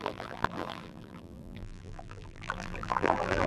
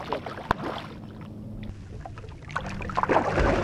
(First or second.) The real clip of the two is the second